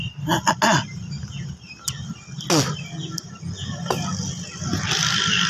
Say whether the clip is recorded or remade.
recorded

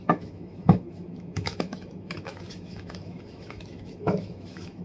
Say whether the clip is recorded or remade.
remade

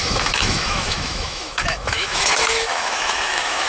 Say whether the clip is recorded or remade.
remade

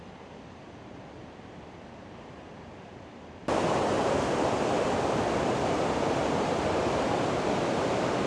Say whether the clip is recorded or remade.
remade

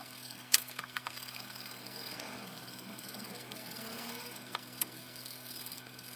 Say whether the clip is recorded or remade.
remade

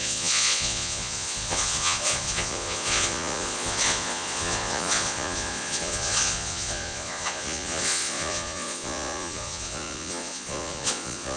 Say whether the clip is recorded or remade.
remade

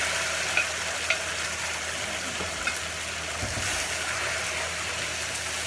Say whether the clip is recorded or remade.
recorded